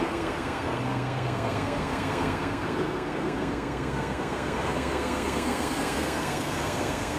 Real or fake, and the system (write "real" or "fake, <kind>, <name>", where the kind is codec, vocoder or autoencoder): fake, codec, SNAC